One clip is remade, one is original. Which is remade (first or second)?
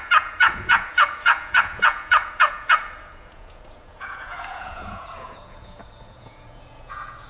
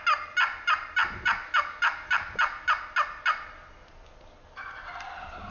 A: first